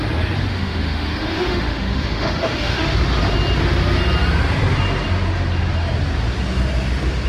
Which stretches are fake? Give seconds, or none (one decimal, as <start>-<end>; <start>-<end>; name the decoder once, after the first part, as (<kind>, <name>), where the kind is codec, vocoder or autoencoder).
0.5-2.8 (autoencoder, DAC-VAE)